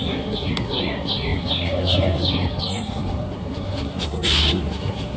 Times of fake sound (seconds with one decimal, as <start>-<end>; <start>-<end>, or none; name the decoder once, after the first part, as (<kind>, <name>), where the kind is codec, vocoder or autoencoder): 0.0-5.2 (codec, SNAC)